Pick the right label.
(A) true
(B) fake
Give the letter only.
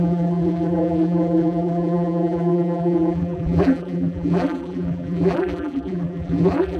B